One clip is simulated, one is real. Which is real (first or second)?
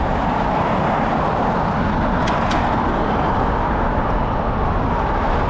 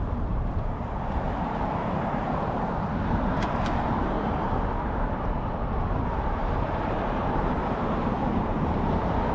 first